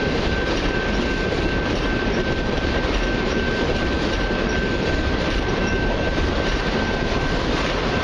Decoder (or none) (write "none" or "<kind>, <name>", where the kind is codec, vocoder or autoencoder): vocoder, BigVGAN v2